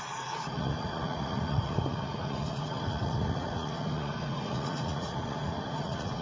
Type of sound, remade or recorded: remade